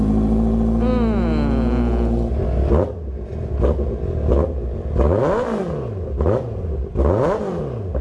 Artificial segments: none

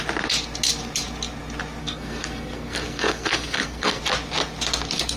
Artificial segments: 1.8-4.0 (codec, SNAC)

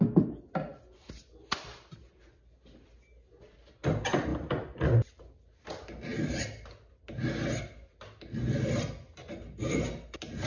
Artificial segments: 4.3-5.2 (vocoder, BigVGAN v2)